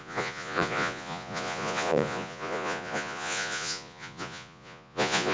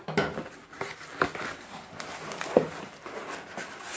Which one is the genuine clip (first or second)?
second